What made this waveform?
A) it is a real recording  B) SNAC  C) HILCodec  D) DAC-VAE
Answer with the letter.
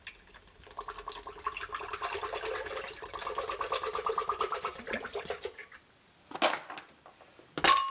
A